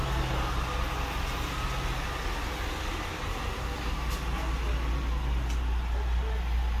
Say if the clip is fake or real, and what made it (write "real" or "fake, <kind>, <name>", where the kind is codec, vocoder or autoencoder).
real